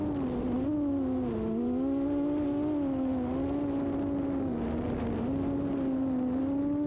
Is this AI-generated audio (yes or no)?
no